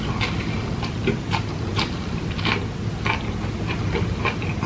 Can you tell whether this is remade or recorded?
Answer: recorded